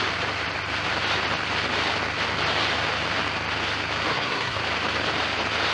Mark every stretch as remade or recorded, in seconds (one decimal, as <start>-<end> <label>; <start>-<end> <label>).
0.0-4.1 recorded; 4.1-4.6 remade; 4.6-5.7 recorded